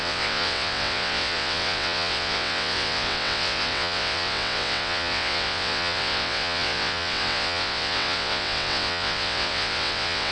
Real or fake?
fake